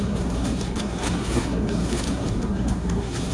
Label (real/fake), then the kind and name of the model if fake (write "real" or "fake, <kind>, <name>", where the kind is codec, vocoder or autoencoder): fake, codec, SNAC